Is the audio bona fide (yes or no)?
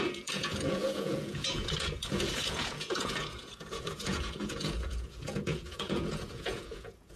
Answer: no